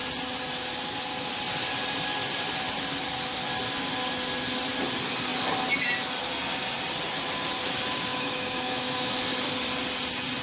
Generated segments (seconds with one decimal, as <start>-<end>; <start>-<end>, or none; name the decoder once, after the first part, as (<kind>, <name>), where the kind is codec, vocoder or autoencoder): 8.1-9.1 (autoencoder, DAC-VAE)